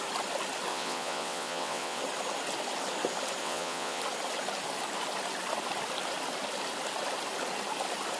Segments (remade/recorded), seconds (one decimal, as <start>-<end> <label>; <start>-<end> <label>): 0.0-0.7 recorded; 0.7-2.0 remade; 2.0-3.4 recorded; 3.4-4.0 remade; 4.0-8.2 recorded